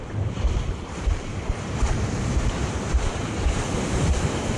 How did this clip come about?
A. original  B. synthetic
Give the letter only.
B